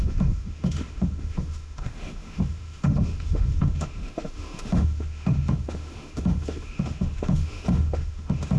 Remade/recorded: remade